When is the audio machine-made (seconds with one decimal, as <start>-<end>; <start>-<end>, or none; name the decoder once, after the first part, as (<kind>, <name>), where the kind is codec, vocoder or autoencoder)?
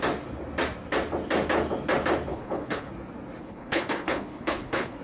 2.3-2.9 (codec, HILCodec); 3.4-5.0